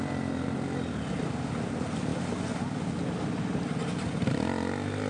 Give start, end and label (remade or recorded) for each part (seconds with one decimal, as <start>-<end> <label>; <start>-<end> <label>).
0.0-5.1 recorded